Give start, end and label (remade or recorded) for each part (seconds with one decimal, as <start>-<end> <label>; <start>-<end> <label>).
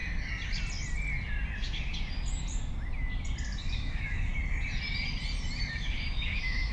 0.0-3.7 recorded; 3.7-4.3 remade; 4.3-5.7 recorded; 5.7-6.7 remade